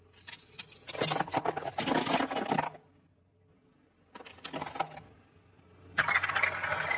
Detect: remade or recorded recorded